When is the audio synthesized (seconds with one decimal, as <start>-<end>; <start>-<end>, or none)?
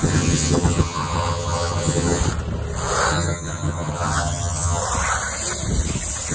0.0-2.2; 3.1-4.8